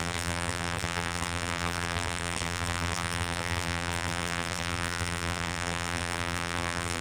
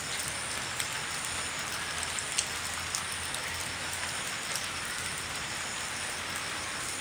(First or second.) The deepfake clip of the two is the first